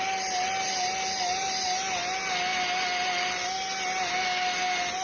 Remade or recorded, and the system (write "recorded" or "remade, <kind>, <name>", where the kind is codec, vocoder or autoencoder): recorded